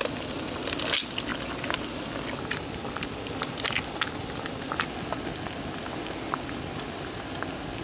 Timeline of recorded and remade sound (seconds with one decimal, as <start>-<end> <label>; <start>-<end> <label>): 0.0-7.8 recorded